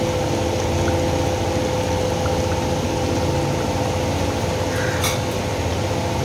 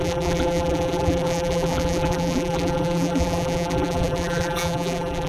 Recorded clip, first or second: first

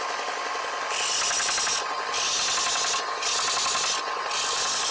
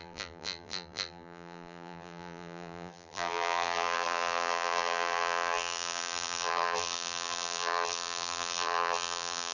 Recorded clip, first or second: first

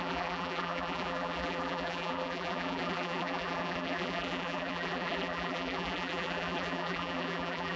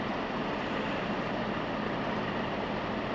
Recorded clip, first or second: second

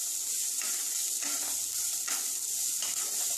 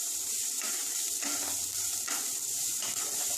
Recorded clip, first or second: first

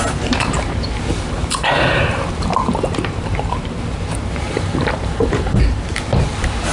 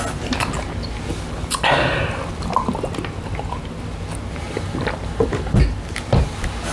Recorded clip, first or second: second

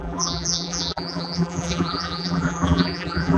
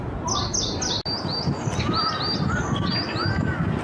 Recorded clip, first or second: second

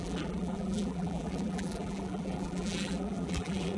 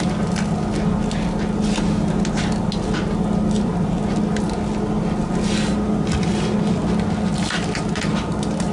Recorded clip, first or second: second